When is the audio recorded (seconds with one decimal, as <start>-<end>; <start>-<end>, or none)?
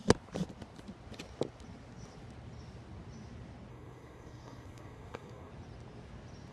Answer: 0.0-3.7; 5.5-6.5